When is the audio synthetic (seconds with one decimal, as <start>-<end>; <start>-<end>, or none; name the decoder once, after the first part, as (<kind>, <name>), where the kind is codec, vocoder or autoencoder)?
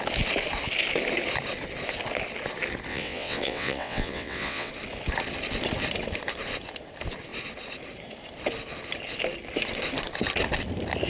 2.9-4.7 (vocoder, WaveNeXt)